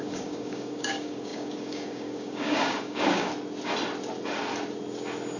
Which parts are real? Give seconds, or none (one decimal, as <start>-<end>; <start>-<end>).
3.3-5.4